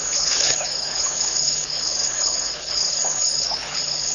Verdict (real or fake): fake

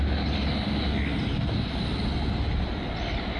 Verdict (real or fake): real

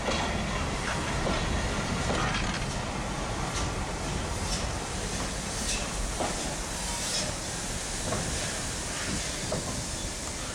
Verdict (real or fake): real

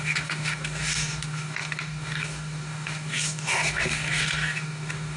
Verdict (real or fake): fake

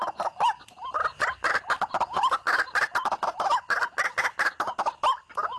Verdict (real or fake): real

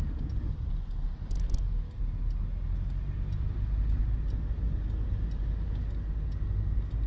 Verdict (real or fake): real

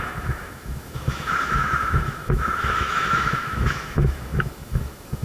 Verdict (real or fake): fake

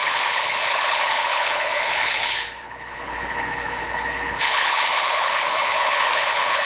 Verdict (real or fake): fake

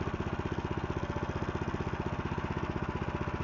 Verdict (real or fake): real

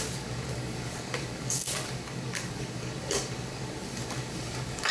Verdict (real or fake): fake